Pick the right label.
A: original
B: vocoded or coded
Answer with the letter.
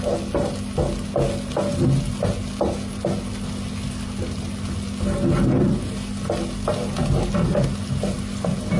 A